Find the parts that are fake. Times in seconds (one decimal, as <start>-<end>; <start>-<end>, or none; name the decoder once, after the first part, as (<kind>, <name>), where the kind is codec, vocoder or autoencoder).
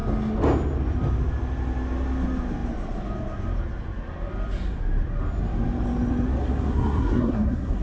6.4-7.8 (codec, SNAC)